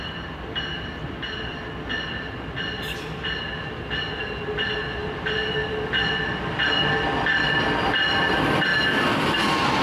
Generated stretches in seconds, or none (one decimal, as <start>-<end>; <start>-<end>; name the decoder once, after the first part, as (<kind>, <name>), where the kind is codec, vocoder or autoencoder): 8.7-9.4 (vocoder, BigVGAN v2)